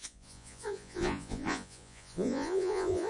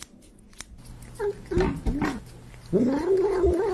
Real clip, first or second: second